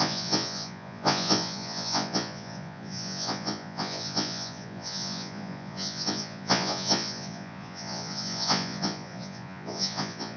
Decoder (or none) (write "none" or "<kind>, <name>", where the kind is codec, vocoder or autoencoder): vocoder, Vocos